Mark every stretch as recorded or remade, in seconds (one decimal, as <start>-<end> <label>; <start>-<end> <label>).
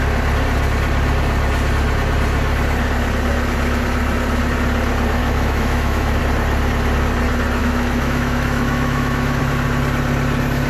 0.0-5.2 recorded; 5.2-6.2 remade; 6.2-7.6 recorded; 7.6-9.4 remade; 9.4-10.7 recorded